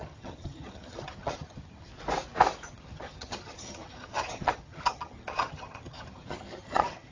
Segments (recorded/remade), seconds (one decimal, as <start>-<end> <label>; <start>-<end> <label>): 0.0-1.9 remade; 1.9-2.7 recorded; 2.7-7.1 remade